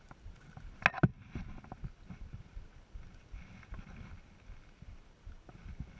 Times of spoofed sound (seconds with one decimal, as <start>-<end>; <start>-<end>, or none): none